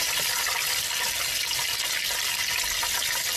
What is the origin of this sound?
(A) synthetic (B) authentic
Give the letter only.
B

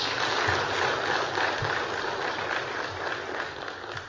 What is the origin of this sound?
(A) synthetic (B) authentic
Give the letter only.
B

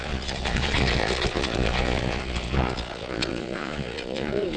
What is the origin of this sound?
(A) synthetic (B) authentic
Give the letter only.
A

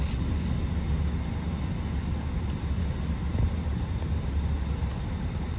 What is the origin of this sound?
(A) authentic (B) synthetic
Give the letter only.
A